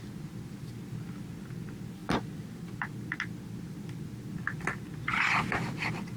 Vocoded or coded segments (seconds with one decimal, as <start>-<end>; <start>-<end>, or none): none